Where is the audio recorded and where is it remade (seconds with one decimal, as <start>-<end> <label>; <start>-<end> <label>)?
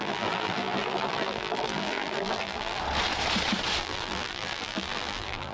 0.0-2.8 remade; 2.8-3.8 recorded; 3.8-5.5 remade